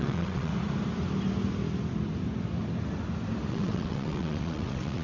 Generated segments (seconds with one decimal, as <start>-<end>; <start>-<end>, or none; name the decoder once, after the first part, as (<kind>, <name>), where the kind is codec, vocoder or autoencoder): 0.0-0.5 (vocoder, WaveNeXt); 3.5-5.0